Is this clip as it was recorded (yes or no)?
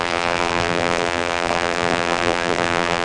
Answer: no